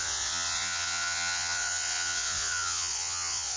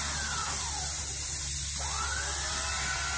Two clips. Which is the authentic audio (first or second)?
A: second